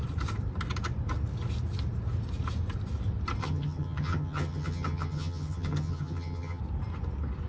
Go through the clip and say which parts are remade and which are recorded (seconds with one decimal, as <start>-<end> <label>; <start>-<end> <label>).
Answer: 0.0-3.4 recorded; 3.4-6.6 remade; 6.6-7.5 recorded